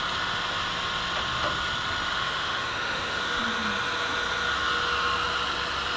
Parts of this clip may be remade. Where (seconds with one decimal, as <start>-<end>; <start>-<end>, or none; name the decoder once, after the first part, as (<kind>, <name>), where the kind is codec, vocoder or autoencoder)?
2.1-3.2 (autoencoder, DAC-VAE)